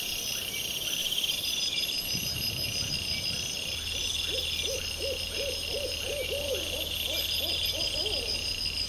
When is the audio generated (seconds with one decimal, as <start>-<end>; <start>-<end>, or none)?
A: 1.0-2.9